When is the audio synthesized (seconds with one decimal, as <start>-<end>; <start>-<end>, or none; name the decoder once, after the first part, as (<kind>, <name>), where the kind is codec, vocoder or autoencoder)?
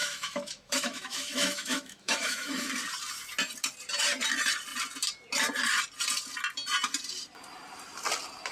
0.0-2.7 (autoencoder, DAC-VAE)